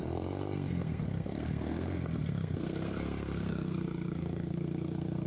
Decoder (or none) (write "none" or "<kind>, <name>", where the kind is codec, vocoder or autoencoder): codec, SNAC